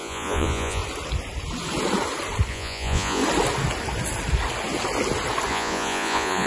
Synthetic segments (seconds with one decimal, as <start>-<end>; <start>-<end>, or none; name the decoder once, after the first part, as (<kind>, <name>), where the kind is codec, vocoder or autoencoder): 0.0-0.8 (vocoder, Vocos); 2.5-3.2; 5.5-6.5